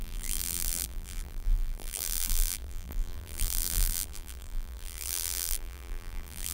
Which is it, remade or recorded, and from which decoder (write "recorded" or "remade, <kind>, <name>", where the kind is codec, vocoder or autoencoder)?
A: remade, vocoder, BigVGAN v2